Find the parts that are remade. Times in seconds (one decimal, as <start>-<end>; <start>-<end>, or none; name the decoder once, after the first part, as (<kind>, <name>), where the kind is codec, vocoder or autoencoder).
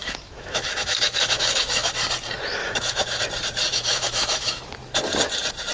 0.0-1.9 (autoencoder, DAC-VAE); 2.6-3.2; 3.7-4.6